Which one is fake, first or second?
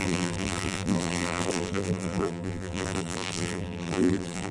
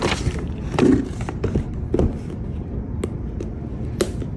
first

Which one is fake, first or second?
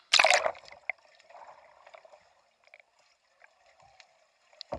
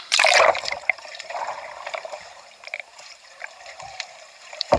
second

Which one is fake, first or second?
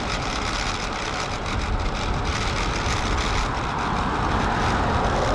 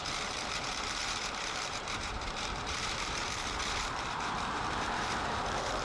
second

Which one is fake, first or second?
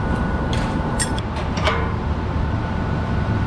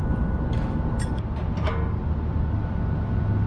first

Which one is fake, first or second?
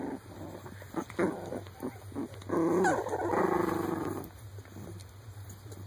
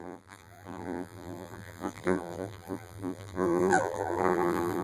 second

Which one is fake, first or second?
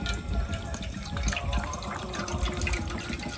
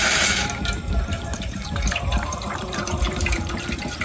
second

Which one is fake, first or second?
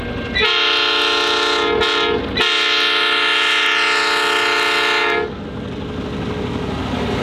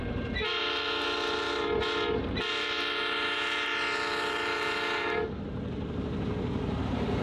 second